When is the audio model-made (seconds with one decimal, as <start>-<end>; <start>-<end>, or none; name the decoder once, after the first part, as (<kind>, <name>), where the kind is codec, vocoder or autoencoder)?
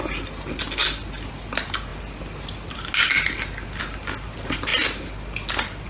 none